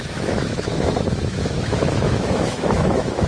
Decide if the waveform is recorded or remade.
remade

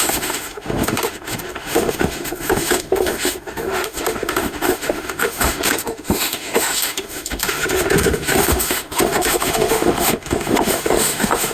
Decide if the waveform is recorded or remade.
remade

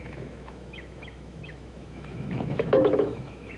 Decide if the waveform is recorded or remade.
remade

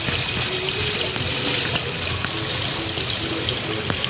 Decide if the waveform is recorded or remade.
recorded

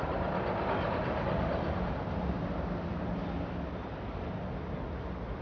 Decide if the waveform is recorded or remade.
recorded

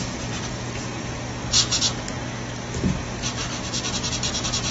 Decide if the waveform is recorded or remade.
recorded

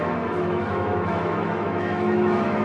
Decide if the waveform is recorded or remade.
remade